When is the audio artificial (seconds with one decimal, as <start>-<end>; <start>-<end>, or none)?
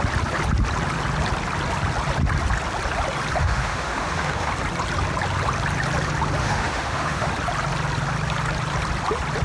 3.4-4.5; 6.4-7.3